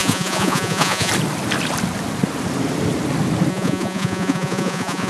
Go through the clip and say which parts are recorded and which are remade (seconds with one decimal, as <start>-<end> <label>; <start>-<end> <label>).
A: 0.0-1.1 remade; 1.1-3.5 recorded; 3.5-5.1 remade